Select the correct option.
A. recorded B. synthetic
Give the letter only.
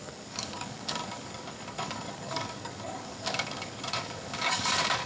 B